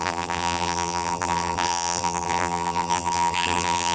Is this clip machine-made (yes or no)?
yes